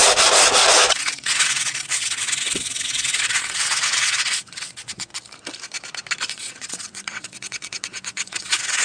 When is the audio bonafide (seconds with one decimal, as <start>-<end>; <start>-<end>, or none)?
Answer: 0.0-0.9; 5.1-6.3